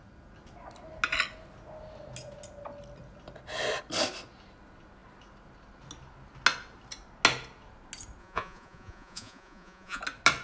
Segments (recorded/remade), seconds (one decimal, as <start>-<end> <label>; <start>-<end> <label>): 0.0-8.2 recorded; 8.2-10.0 remade; 10.0-10.4 recorded